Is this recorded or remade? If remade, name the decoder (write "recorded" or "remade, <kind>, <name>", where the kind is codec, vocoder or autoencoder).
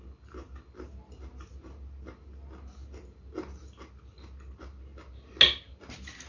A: recorded